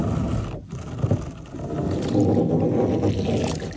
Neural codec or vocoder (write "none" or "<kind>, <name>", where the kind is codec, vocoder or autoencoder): none